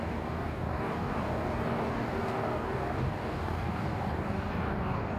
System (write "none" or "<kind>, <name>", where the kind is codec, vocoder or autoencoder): codec, DAC